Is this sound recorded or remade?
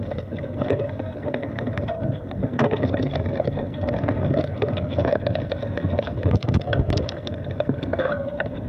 remade